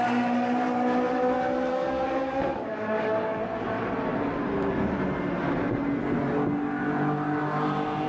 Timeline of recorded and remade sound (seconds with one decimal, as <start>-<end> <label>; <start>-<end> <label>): 0.0-1.7 recorded; 1.7-3.4 remade; 3.4-8.1 recorded

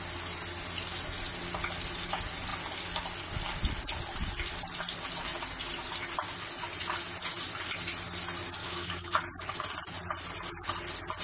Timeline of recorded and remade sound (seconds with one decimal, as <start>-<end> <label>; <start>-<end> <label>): 0.0-8.6 recorded; 8.6-9.2 remade; 9.2-11.2 recorded

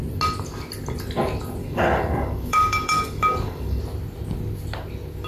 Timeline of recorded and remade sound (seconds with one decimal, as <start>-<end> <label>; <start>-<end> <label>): 0.0-1.6 recorded; 1.6-3.8 remade; 3.8-5.3 recorded

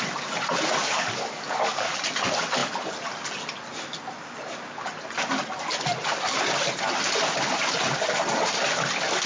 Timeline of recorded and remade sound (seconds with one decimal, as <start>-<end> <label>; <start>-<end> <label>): 0.0-0.8 recorded; 0.8-1.9 remade; 1.9-9.3 recorded